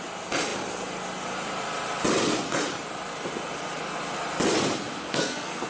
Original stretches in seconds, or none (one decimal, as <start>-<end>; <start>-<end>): 0.0-5.0